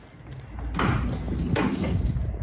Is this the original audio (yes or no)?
yes